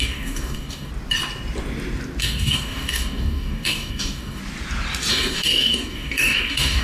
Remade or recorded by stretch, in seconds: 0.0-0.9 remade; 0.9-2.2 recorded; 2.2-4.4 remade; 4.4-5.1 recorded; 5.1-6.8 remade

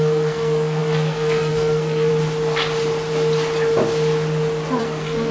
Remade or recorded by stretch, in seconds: 0.0-2.1 remade; 2.1-4.8 recorded; 4.8-5.3 remade

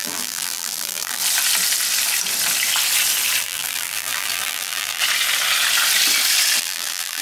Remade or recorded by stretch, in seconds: 0.0-1.2 remade; 1.2-3.4 recorded; 3.4-5.0 remade; 5.0-6.6 recorded; 6.6-7.2 remade

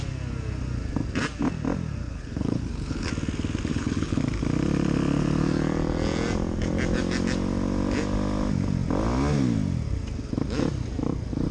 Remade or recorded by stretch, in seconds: 0.0-2.0 recorded; 2.0-3.1 remade; 3.1-3.7 recorded; 3.7-4.2 remade; 4.2-11.5 recorded

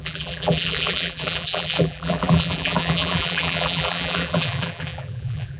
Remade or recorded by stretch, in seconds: 0.0-5.6 remade

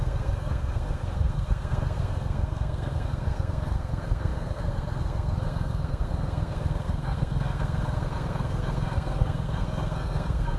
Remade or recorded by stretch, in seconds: 0.0-10.6 remade